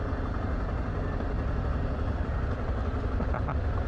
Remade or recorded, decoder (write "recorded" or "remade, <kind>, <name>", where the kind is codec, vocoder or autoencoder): recorded